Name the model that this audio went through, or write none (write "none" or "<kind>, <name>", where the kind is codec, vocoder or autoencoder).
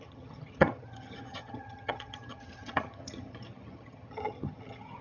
vocoder, HiFi-GAN